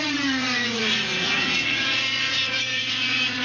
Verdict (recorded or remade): remade